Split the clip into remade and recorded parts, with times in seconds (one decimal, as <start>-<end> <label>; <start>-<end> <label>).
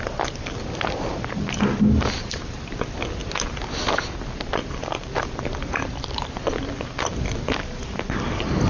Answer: 0.0-3.2 recorded; 3.2-6.5 remade; 6.5-8.7 recorded